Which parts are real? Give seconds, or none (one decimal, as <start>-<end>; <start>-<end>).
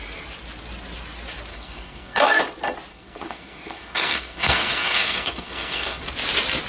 0.0-1.5; 2.4-2.9; 6.0-6.7